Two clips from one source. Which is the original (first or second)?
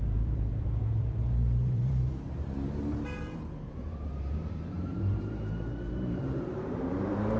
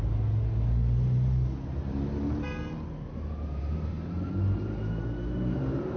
second